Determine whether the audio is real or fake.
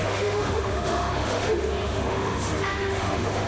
fake